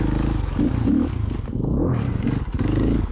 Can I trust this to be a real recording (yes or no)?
no